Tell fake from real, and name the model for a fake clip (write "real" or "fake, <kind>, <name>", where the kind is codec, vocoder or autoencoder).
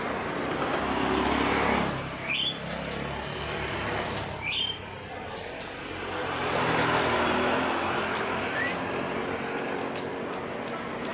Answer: real